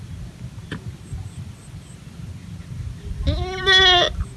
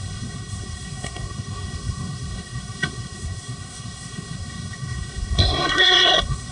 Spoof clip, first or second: second